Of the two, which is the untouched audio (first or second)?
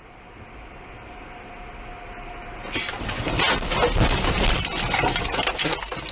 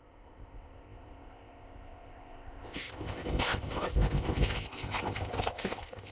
first